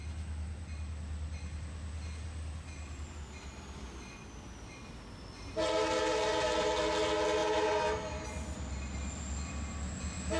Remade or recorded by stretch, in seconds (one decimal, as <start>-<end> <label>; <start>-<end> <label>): 0.0-10.4 recorded